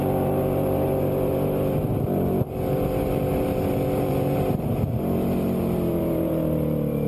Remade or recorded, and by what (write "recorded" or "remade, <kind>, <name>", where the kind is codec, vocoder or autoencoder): remade, vocoder, BigVGAN v2